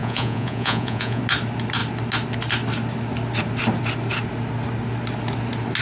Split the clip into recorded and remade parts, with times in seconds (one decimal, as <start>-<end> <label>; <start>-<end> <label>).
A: 0.0-1.2 remade; 1.2-5.8 recorded